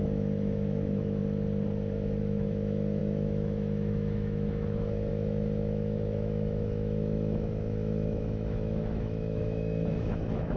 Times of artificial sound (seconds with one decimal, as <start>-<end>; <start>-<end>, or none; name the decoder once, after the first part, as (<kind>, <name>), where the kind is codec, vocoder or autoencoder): 0.0-1.2 (autoencoder, DAC-VAE); 2.2-10.6